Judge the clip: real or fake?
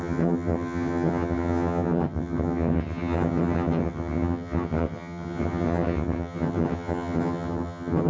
fake